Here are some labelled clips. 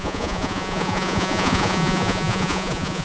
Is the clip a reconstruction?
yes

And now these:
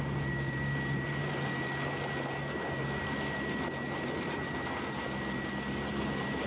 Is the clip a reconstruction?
no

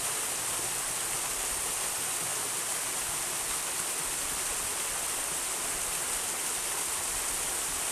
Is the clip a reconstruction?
no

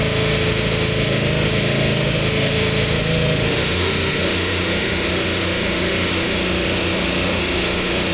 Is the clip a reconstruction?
yes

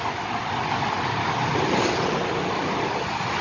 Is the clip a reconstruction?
no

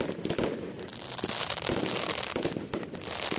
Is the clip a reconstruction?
no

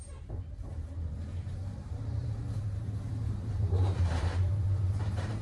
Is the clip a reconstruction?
yes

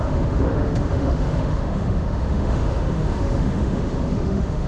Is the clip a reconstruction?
yes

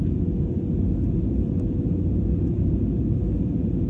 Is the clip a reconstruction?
no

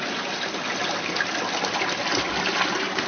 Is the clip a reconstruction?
no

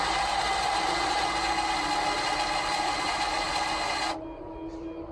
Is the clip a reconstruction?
no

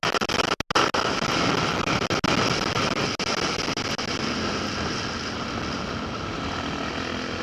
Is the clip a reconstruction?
no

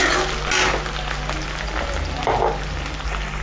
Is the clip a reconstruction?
no